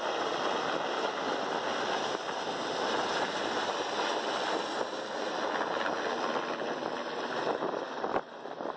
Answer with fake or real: real